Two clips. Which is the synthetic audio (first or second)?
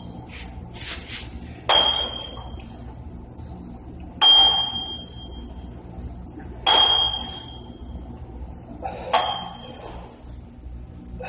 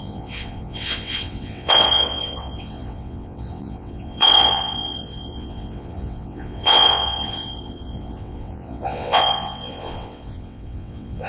second